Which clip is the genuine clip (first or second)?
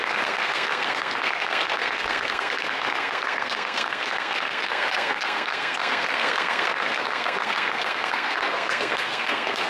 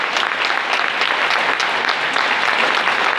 second